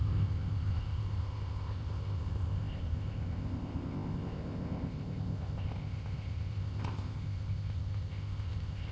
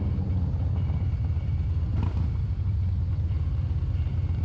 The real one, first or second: second